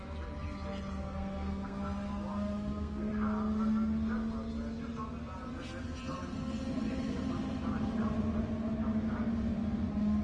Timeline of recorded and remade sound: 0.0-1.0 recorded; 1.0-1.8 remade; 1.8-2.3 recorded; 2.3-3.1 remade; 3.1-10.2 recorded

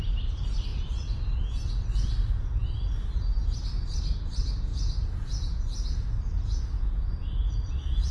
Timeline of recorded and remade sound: 0.0-4.7 recorded; 4.7-7.3 remade; 7.3-8.1 recorded